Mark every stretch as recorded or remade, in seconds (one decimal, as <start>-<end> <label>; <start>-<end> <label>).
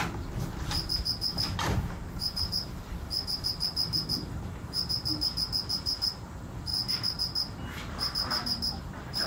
0.0-9.3 remade